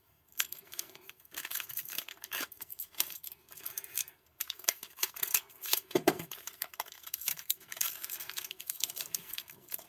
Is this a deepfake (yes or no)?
yes